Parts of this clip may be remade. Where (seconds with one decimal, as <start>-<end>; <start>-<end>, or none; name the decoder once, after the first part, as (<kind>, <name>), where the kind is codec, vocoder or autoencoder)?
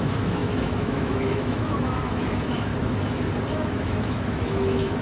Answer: 0.0-2.7 (autoencoder, DAC-VAE); 3.5-5.0